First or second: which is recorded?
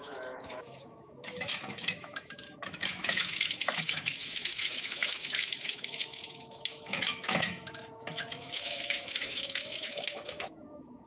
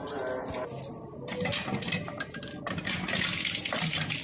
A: second